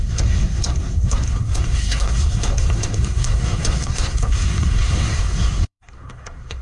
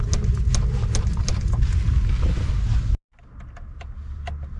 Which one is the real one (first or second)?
second